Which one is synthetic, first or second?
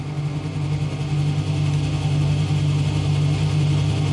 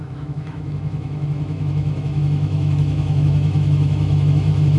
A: second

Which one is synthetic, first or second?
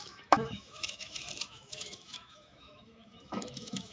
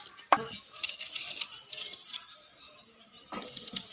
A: first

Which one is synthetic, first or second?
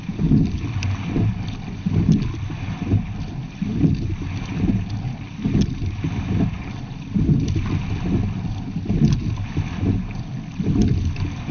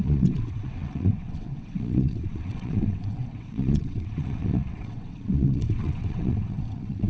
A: second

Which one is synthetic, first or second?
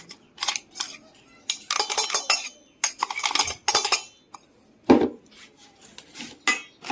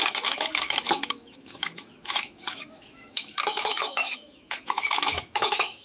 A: second